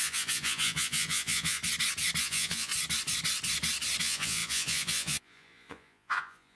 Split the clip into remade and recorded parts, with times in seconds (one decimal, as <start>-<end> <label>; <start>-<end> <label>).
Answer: 0.0-1.6 remade; 1.6-2.2 recorded; 2.2-2.7 remade; 2.7-4.0 recorded; 4.0-6.6 remade